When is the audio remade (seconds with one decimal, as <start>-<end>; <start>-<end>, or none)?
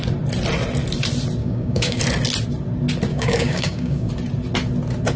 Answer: 1.4-2.0; 3.1-4.1